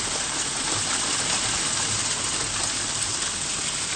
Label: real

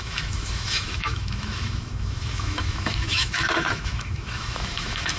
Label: fake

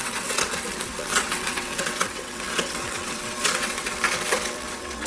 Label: fake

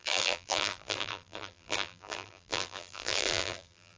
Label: fake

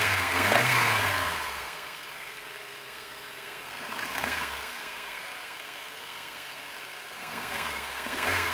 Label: fake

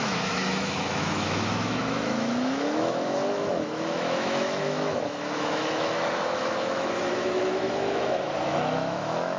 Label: fake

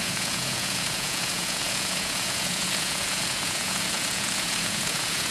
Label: fake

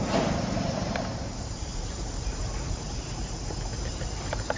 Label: fake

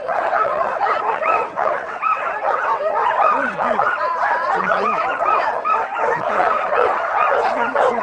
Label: fake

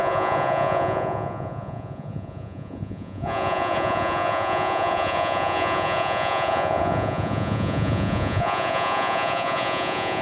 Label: fake